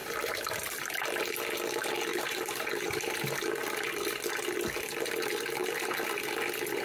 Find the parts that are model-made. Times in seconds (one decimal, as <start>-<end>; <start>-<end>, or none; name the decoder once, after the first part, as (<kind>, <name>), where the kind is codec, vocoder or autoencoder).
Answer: 0.0-0.9 (vocoder, BigVGAN v2); 2.1-3.4; 5.6-6.2